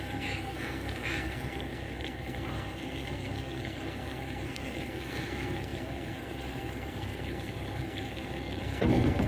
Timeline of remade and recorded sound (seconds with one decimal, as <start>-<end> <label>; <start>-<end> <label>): 0.0-9.3 remade